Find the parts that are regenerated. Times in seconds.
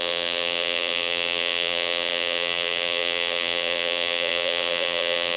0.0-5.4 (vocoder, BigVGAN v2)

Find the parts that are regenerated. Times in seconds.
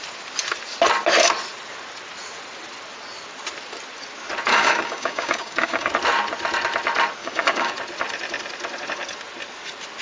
4.5-5.9 (codec, DAC); 7.2-7.7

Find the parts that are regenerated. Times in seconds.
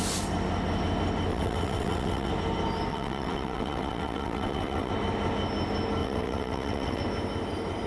1.3-2.3 (vocoder, WaveNeXt); 2.9-4.9; 6.0-7.0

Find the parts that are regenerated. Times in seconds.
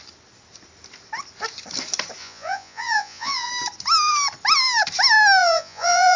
2.2-3.5 (vocoder, Vocos); 5.4-6.2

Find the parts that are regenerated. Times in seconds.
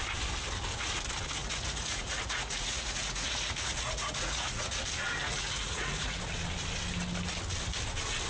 1.4-4.8 (vocoder, Vocos); 5.2-6.2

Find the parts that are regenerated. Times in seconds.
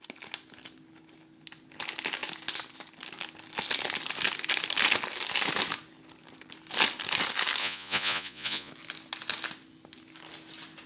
7.6-8.7 (vocoder, Vocos)